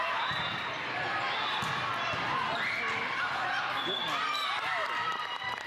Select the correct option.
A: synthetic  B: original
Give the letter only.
A